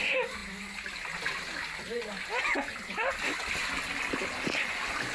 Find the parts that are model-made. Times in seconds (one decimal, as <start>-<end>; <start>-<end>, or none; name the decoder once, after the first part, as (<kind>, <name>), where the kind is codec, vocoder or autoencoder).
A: none